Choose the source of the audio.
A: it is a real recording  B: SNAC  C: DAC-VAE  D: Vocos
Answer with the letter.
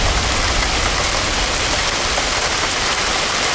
A